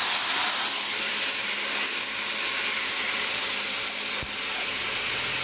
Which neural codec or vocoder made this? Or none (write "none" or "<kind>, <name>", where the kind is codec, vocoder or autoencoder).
none